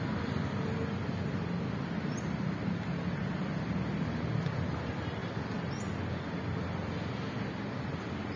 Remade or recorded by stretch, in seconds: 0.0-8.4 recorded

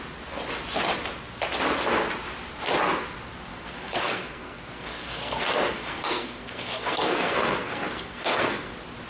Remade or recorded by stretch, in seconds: 0.0-3.5 recorded; 3.5-8.7 remade; 8.7-9.1 recorded

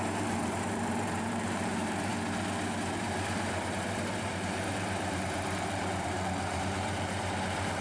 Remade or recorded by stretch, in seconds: 0.0-2.1 remade; 2.1-3.0 recorded; 3.0-7.8 remade

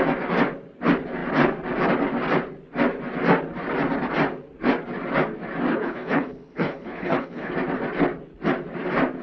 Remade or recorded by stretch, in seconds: 0.0-5.7 recorded; 5.7-7.5 remade; 7.5-9.2 recorded

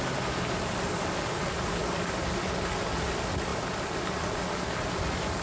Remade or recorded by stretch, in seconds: 0.0-5.4 recorded

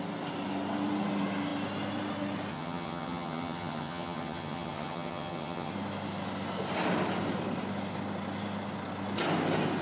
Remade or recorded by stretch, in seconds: 0.0-2.5 recorded; 2.5-5.7 remade; 5.7-9.8 recorded

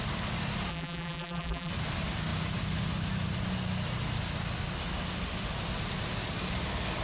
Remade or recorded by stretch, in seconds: 0.0-0.7 recorded; 0.7-1.7 remade; 1.7-7.0 recorded